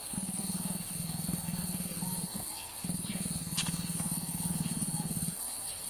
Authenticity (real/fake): fake